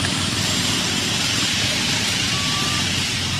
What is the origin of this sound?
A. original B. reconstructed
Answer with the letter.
B